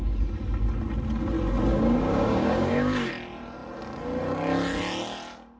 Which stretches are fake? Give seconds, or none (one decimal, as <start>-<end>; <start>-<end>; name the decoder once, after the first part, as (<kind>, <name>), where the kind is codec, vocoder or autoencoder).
1.7-3.1 (codec, DAC)